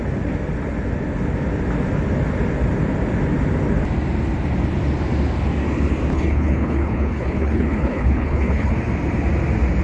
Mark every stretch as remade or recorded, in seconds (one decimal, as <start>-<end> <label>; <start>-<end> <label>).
0.0-6.1 recorded; 6.1-8.7 remade; 8.7-9.8 recorded